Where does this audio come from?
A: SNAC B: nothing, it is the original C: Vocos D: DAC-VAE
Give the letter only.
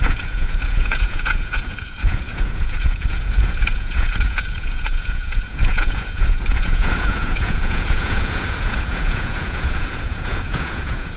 C